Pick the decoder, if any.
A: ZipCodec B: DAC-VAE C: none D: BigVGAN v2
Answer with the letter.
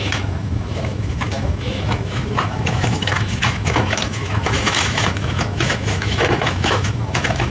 B